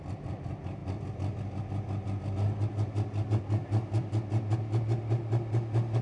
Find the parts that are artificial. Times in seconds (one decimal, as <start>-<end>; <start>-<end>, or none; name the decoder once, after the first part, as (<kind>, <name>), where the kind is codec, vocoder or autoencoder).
none